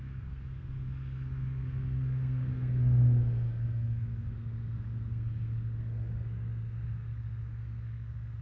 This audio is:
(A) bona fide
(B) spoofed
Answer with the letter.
B